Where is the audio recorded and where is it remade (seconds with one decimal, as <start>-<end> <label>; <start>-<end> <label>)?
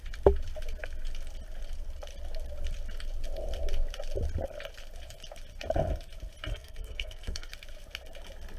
0.0-6.5 recorded; 6.5-7.5 remade; 7.5-8.6 recorded